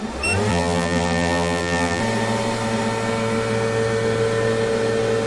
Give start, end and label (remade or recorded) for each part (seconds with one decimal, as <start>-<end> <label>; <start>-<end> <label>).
0.0-0.5 recorded; 0.5-2.0 remade; 2.0-5.3 recorded